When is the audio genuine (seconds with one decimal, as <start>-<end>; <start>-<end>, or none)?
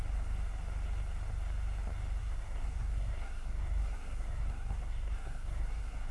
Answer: 0.0-2.2